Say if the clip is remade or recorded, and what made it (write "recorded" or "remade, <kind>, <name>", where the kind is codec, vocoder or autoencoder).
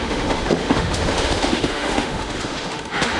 remade, autoencoder, DAC-VAE